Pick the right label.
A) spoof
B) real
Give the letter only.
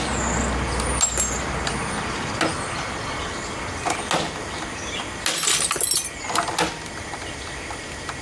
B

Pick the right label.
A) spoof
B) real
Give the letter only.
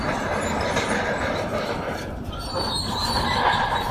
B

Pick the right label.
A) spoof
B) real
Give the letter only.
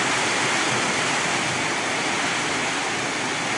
B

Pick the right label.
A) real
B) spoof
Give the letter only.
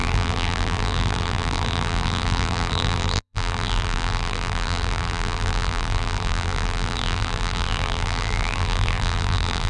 B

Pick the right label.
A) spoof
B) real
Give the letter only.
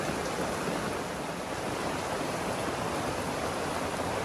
B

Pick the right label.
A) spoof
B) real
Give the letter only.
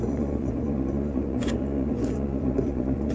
A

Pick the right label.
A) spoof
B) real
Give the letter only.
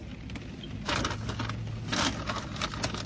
B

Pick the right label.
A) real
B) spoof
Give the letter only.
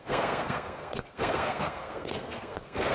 B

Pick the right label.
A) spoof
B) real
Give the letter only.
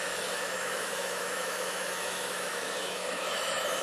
A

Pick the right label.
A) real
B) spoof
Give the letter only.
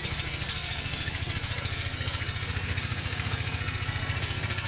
B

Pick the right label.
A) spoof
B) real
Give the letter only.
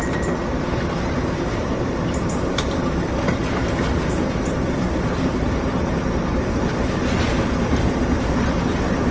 A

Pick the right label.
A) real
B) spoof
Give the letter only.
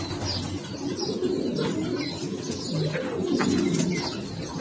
A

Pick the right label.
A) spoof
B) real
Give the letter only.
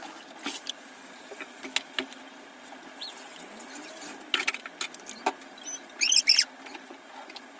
B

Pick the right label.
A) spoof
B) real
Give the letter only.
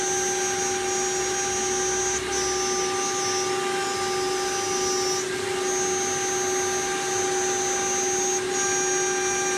B